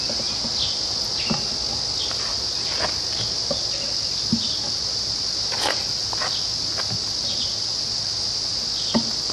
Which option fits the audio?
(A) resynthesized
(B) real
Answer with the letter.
B